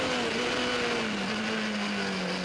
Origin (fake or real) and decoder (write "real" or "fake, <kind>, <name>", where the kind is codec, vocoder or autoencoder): real